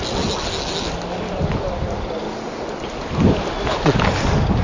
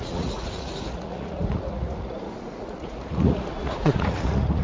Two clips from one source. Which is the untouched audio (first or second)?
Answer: first